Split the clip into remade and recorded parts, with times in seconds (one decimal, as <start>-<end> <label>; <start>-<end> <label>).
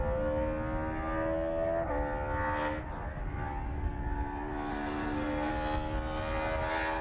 0.0-4.7 recorded; 4.7-5.5 remade; 5.5-7.0 recorded